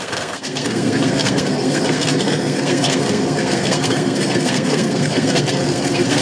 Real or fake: fake